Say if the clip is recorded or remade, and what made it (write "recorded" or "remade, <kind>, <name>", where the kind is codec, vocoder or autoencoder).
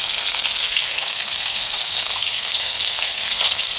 remade, codec, SNAC